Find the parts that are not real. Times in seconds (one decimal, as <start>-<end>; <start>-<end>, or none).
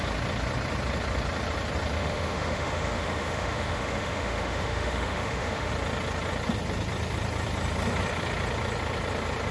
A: 2.0-5.7